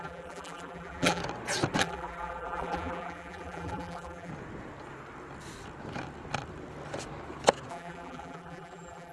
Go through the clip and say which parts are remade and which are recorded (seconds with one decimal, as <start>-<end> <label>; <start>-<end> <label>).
0.0-1.2 remade; 1.2-1.8 recorded; 1.8-4.3 remade; 4.3-7.7 recorded; 7.7-9.1 remade